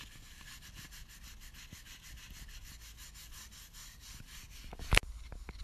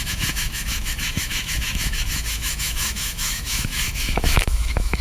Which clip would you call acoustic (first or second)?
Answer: first